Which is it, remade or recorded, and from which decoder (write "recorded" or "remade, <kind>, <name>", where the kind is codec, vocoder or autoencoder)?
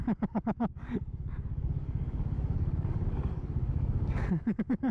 remade, codec, DAC